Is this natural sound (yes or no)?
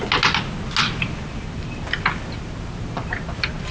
yes